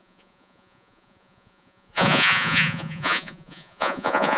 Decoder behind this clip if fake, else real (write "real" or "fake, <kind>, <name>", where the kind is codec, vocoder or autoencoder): fake, vocoder, Vocos